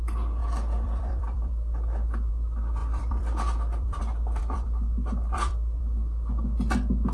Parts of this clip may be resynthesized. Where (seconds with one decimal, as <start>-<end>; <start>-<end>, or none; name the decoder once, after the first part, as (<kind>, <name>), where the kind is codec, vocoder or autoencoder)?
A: 0.4-2.3 (vocoder, BigVGAN v2); 2.8-4.0; 4.4-5.8